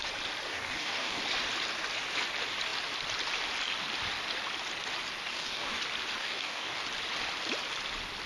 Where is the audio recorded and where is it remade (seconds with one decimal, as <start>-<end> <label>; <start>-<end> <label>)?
0.0-0.5 recorded; 0.5-1.2 remade; 1.2-5.2 recorded; 5.2-5.8 remade; 5.8-6.2 recorded; 6.2-6.8 remade; 6.8-8.3 recorded